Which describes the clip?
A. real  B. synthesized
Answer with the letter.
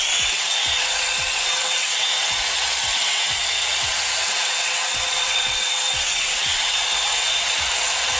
B